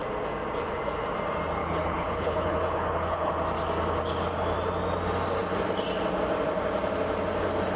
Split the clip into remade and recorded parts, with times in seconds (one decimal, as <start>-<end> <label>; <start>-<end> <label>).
0.0-1.6 recorded; 1.6-3.3 remade; 3.3-7.8 recorded